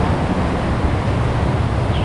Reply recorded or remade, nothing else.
recorded